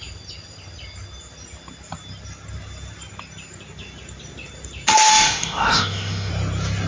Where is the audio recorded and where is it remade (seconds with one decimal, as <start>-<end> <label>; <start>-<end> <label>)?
0.0-5.1 recorded; 5.1-6.3 remade; 6.3-6.9 recorded